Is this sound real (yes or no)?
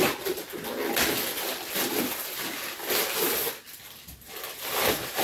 yes